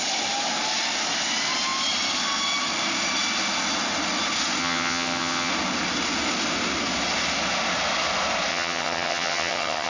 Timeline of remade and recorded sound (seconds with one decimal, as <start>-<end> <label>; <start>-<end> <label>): 0.0-4.6 recorded; 4.6-5.5 remade; 5.5-8.5 recorded; 8.5-9.9 remade